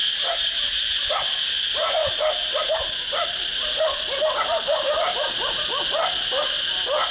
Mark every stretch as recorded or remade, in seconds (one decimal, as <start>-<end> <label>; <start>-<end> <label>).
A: 0.0-3.5 recorded; 3.5-6.4 remade; 6.4-7.1 recorded